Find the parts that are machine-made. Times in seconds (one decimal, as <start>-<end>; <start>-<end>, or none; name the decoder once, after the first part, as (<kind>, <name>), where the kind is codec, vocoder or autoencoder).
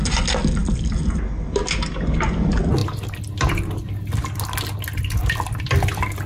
0.6-1.2 (vocoder, BigVGAN v2); 2.8-3.5